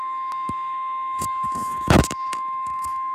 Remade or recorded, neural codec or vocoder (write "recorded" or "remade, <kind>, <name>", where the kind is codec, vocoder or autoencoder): remade, autoencoder, DAC-VAE